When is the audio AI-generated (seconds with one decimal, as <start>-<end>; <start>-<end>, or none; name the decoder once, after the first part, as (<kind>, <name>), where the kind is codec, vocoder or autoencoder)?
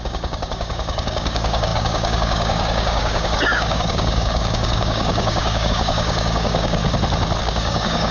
0.0-6.8 (codec, DAC); 7.4-8.1